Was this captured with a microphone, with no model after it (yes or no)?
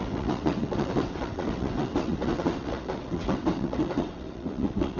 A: no